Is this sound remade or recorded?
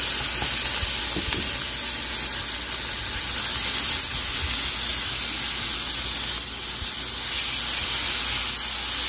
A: recorded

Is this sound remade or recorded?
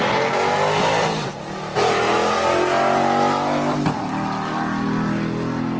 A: recorded